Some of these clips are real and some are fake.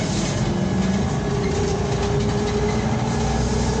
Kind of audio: real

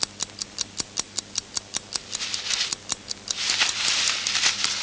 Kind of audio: real